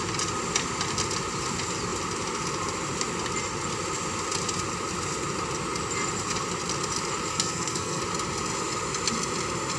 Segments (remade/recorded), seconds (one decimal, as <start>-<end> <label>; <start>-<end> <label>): 0.0-7.3 recorded; 7.3-8.0 remade; 8.0-9.8 recorded